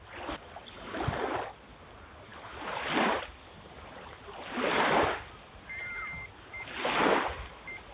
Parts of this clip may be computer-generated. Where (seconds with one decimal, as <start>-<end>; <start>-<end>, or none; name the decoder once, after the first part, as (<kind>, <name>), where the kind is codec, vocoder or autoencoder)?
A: none